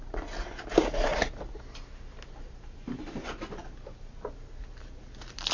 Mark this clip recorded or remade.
recorded